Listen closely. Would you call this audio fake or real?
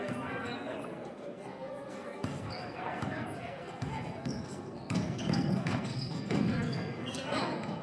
fake